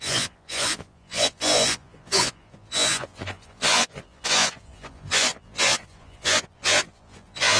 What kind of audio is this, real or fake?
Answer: fake